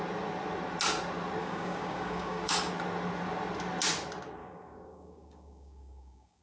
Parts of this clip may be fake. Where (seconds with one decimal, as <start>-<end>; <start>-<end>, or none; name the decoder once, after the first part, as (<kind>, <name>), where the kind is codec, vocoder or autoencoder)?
1.4-2.7 (codec, DAC); 4.4-6.4